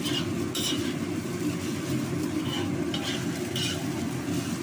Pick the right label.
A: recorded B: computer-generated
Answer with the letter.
A